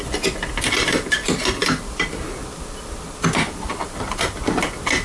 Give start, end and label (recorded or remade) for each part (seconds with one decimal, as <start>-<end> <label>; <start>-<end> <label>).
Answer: 0.0-5.0 recorded